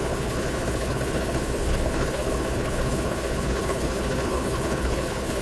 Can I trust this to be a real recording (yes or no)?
no